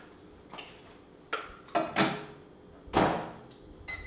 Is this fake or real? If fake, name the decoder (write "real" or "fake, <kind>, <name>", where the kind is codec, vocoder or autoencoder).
real